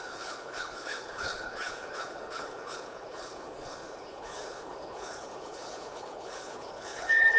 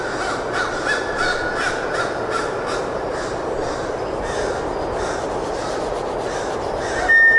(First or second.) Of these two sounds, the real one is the second